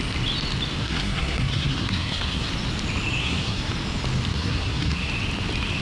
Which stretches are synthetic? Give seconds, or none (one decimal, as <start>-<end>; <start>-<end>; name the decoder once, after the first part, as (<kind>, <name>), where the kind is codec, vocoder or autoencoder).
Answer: 0.8-2.5 (codec, SNAC); 3.2-3.7; 4.3-5.1